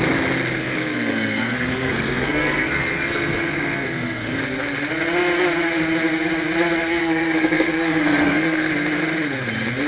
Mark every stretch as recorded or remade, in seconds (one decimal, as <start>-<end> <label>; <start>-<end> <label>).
0.0-0.6 recorded; 0.6-4.4 remade; 4.4-7.0 recorded; 7.0-8.7 remade; 8.7-9.9 recorded